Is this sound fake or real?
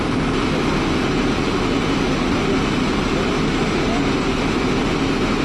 real